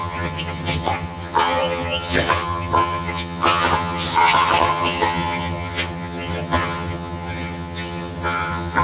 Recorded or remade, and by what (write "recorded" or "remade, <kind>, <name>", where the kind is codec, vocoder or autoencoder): remade, vocoder, HiFi-GAN